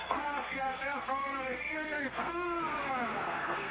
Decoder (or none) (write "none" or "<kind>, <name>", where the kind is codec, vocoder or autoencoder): codec, SNAC